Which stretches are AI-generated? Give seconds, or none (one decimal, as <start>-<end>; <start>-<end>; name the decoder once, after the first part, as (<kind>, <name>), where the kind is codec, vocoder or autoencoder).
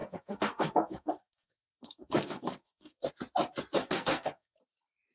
0.0-3.1 (codec, SNAC); 3.8-4.6